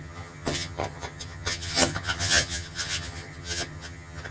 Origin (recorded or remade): remade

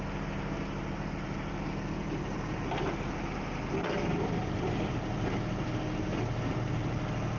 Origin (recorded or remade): recorded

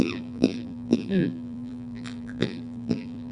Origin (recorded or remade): remade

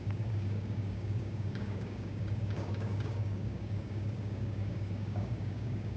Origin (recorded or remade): remade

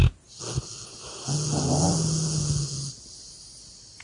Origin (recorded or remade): recorded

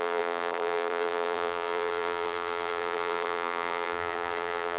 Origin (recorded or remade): remade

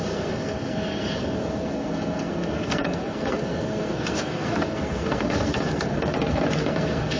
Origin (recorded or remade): remade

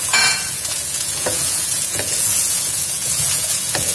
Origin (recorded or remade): remade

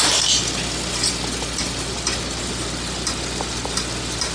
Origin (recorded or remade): recorded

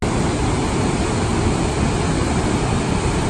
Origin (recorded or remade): recorded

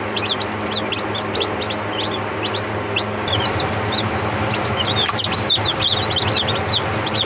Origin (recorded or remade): recorded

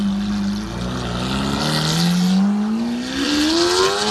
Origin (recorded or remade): recorded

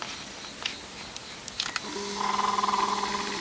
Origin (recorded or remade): recorded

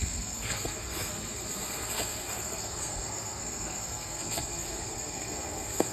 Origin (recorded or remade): remade